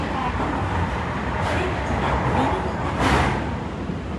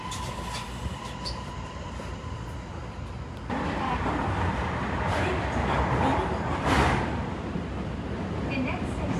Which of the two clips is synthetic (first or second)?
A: second